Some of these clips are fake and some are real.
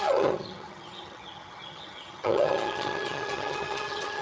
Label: fake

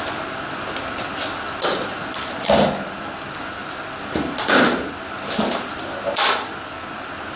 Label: real